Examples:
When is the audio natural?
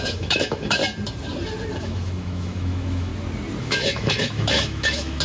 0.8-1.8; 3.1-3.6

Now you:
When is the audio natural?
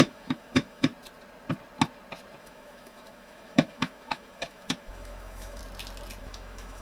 0.9-2.4; 5.6-6.2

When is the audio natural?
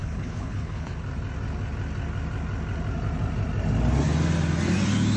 0.9-5.2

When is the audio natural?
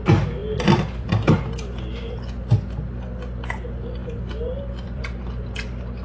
0.0-0.4; 1.1-4.0; 5.0-6.0